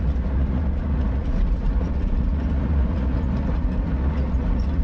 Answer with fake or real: fake